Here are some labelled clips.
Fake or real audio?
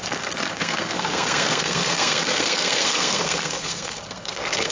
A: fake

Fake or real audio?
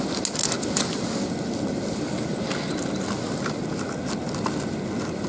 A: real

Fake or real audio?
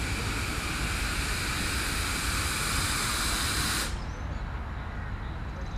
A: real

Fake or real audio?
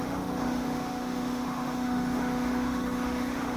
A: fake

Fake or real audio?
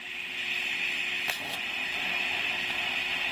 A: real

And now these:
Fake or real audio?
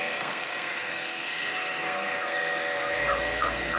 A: fake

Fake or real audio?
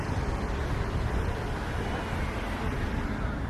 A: real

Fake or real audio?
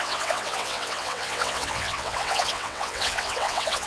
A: fake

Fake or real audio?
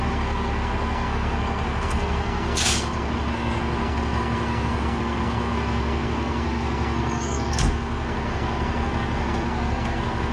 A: fake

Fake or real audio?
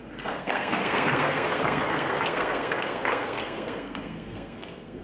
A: fake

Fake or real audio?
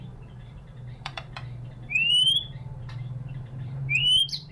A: fake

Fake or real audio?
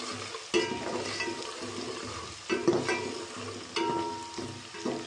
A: real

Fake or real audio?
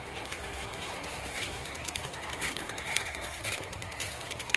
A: fake